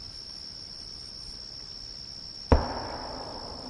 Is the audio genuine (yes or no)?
yes